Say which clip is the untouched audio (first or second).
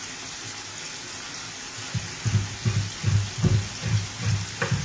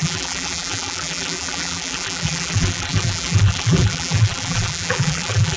first